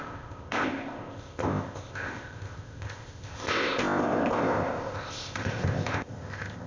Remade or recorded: remade